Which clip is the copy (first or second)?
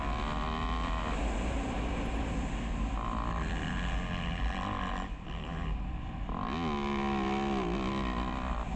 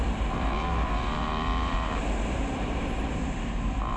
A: second